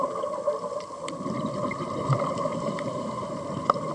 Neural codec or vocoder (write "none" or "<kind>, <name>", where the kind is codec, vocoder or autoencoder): none